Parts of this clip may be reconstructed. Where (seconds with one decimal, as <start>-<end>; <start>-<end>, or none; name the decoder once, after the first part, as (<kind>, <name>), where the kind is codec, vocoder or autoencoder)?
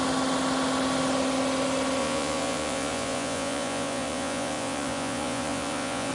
2.0-6.1 (vocoder, Vocos)